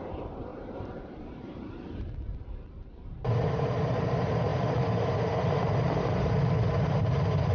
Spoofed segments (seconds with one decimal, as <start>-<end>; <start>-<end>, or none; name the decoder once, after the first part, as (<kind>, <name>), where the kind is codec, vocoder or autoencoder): 0.0-7.5 (vocoder, BigVGAN v2)